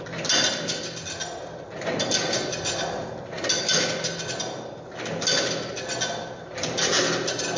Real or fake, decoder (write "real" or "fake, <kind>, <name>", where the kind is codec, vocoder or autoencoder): real